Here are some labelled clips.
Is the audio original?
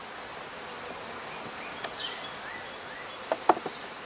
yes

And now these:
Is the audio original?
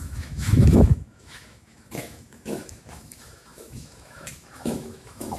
no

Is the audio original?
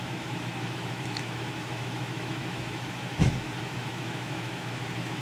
no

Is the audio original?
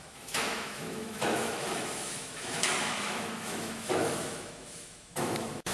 no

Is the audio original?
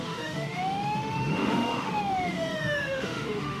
no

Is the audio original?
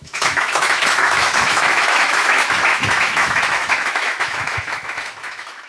no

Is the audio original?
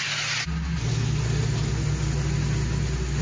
yes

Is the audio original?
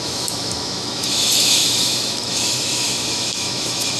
no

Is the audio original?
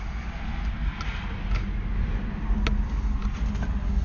yes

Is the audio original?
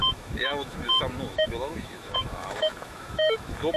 no